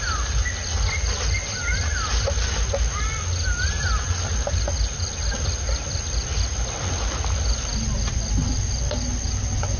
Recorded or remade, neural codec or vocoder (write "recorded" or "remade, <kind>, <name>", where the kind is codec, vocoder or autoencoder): recorded